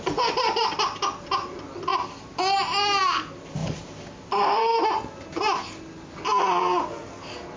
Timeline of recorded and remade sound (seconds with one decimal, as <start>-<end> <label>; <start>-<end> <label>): 0.0-1.9 recorded; 1.9-2.4 remade; 2.4-3.6 recorded; 3.6-4.6 remade; 4.6-7.6 recorded